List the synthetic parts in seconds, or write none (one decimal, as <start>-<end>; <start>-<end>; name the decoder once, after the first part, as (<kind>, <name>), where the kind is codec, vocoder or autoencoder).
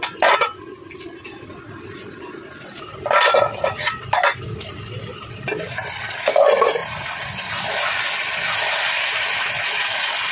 none